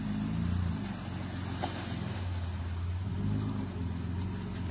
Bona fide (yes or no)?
yes